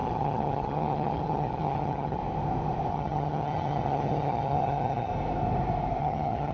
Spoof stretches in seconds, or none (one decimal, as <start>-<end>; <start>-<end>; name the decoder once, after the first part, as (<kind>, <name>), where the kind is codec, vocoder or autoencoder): 0.0-2.2 (vocoder, HiFi-GAN); 2.9-5.1; 6.0-6.5